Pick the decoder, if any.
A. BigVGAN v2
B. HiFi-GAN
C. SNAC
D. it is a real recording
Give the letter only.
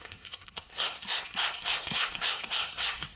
C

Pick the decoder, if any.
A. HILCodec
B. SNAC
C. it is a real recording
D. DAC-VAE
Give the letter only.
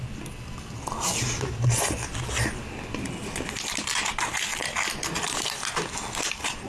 C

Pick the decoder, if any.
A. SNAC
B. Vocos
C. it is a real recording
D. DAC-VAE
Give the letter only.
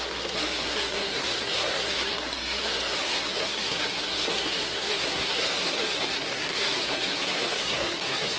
A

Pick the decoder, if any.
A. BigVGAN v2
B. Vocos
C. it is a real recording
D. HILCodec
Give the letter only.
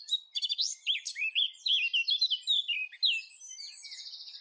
C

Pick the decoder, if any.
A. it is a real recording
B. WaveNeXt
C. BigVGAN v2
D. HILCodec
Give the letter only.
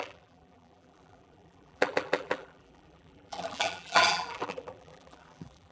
C